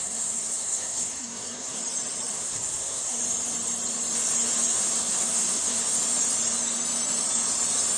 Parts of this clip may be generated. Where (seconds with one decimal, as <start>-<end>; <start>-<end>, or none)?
0.0-1.8; 2.3-3.2; 4.8-5.8